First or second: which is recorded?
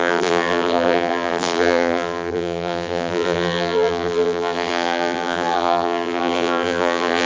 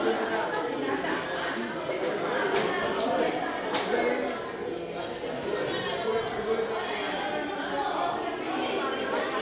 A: second